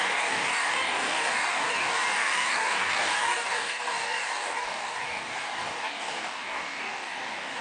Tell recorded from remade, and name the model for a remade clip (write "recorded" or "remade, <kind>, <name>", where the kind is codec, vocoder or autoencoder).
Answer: remade, codec, DAC